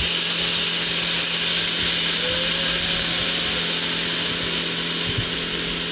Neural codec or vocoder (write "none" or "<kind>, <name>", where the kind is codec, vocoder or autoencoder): none